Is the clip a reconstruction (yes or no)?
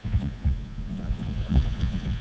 yes